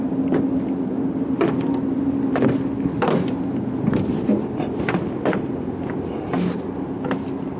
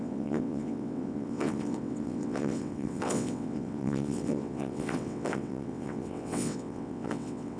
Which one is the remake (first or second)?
second